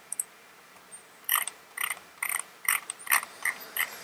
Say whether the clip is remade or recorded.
remade